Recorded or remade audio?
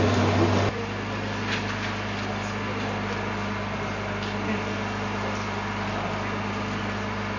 recorded